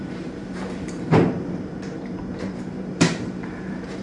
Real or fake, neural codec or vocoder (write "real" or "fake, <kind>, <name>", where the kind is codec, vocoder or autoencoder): fake, vocoder, BigVGAN v2